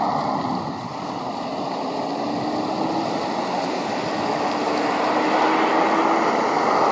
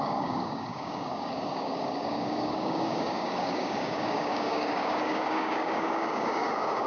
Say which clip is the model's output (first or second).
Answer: second